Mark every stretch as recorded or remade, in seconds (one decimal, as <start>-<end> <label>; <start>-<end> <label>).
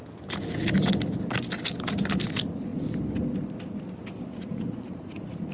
0.0-4.3 recorded; 4.3-5.5 remade